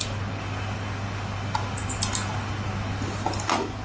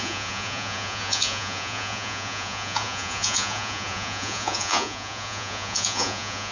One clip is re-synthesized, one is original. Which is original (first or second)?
first